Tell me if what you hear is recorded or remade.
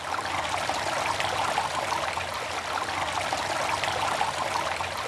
recorded